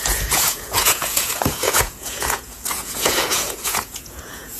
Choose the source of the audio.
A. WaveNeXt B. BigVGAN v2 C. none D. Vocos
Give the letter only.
D